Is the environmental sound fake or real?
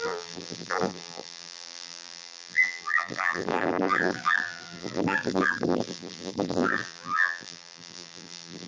fake